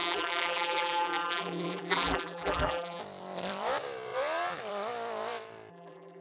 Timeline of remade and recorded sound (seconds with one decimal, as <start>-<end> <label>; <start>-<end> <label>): 0.0-3.0 remade; 3.0-5.7 recorded; 5.7-6.2 remade